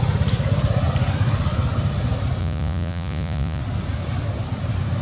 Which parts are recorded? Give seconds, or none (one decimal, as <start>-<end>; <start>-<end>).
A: 0.0-2.4; 3.6-5.0